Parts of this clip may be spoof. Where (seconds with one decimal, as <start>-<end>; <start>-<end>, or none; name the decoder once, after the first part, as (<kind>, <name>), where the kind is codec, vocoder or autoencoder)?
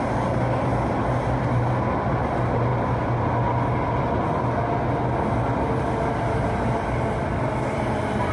none